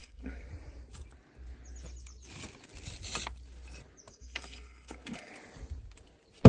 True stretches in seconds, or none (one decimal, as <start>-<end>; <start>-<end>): 0.5-4.1; 5.3-6.5